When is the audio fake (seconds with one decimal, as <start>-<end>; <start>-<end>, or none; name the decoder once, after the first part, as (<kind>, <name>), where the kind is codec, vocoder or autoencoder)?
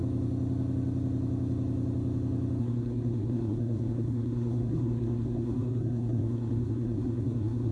2.6-7.7 (codec, SNAC)